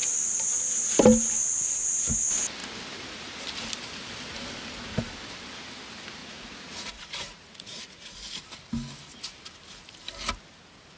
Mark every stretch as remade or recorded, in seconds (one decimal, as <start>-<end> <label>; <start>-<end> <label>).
0.0-6.2 recorded; 6.2-8.4 remade; 8.4-11.0 recorded